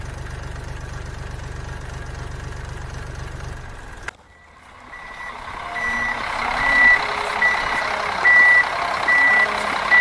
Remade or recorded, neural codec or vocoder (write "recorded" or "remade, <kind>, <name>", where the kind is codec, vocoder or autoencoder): recorded